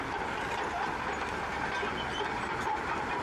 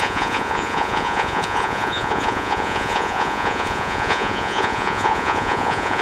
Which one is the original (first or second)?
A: first